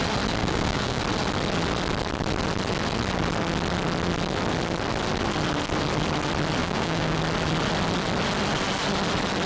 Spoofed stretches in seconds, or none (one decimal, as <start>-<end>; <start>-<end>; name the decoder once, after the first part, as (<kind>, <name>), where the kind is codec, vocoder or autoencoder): 0.4-1.0 (codec, DAC); 6.6-7.2